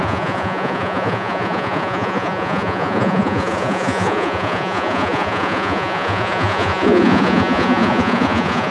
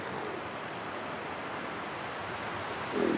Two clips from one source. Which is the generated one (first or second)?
first